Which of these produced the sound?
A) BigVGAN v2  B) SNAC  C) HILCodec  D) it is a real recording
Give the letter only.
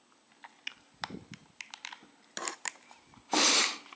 D